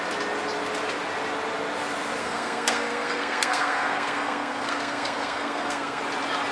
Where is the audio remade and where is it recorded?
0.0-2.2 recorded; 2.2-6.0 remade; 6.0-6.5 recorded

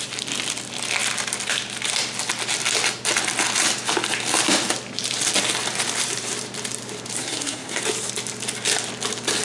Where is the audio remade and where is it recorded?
0.0-7.2 recorded; 7.2-7.8 remade; 7.8-9.4 recorded

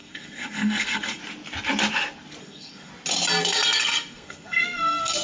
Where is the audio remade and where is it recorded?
0.0-1.2 remade; 1.2-2.4 recorded; 2.4-2.9 remade; 2.9-3.4 recorded; 3.4-5.2 remade

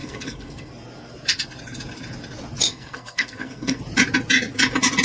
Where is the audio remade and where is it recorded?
0.0-0.7 remade; 0.7-2.7 recorded; 2.7-3.8 remade; 3.8-5.0 recorded

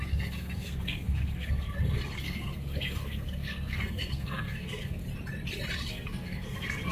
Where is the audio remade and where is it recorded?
0.0-5.0 remade; 5.0-5.9 recorded; 5.9-6.9 remade

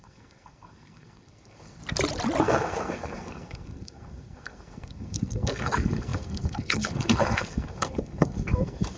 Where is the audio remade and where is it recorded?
0.0-1.8 remade; 1.8-2.4 recorded; 2.4-9.0 remade